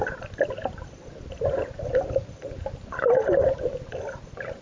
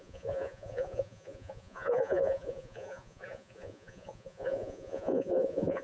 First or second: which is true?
first